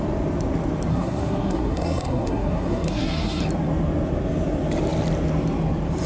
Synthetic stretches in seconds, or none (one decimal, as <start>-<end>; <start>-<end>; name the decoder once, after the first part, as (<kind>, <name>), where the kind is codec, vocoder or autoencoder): 0.9-3.4 (codec, SNAC)